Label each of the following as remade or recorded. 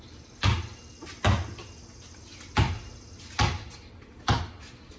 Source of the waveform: recorded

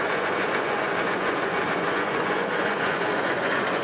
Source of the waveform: remade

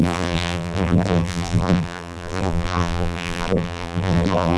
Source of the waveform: remade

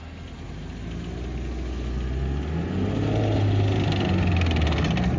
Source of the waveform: recorded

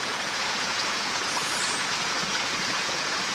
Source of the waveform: remade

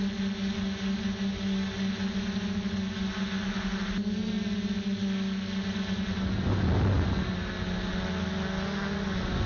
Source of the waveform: recorded